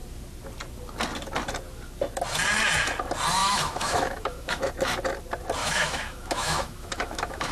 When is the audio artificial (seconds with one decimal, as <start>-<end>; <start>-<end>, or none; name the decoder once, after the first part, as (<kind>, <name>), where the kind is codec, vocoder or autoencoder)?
3.4-4.7 (autoencoder, DAC-VAE); 5.6-7.5